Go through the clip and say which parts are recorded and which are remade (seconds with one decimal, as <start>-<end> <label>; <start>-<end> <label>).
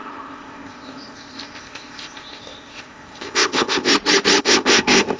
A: 0.0-3.9 remade; 3.9-4.4 recorded; 4.4-5.2 remade